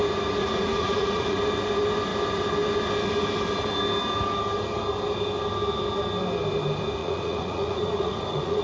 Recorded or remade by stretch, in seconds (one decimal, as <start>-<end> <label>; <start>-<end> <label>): 0.0-0.4 recorded; 0.4-1.4 remade; 1.4-7.0 recorded; 7.0-8.6 remade